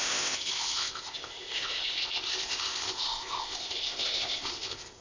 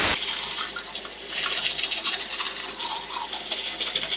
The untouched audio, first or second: second